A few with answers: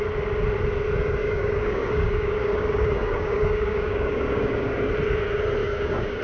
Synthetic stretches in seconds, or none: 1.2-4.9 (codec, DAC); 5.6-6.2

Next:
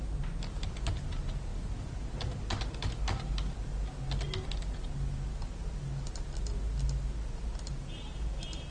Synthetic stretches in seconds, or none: none

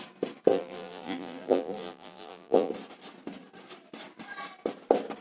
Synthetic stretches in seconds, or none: 0.5-2.7 (vocoder, BigVGAN v2)

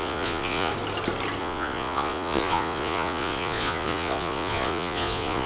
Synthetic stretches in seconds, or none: 0.0-0.7 (vocoder, Vocos); 1.4-5.5

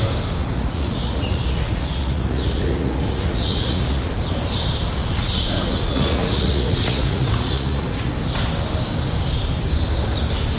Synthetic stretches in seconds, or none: 0.4-4.1 (vocoder, Vocos); 5.2-8.1

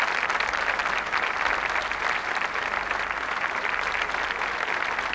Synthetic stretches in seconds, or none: none

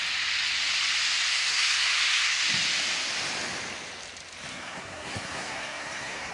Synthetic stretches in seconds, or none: 1.3-2.4 (codec, SNAC); 4.5-6.3

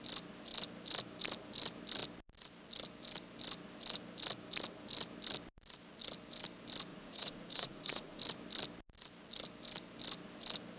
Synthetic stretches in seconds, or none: 6.9-8.2 (vocoder, Vocos)